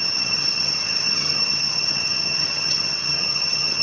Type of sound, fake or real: fake